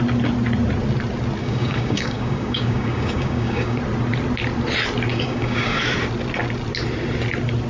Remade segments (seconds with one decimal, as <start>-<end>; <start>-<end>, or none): 1.4-3.8; 5.1-5.8